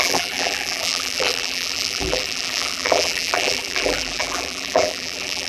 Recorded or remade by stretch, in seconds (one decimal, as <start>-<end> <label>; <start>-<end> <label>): 0.0-5.5 remade